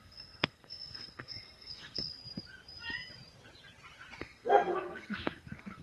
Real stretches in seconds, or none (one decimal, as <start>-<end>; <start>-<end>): 2.2-4.2